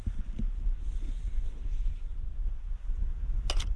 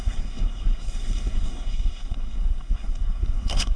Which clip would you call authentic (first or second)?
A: first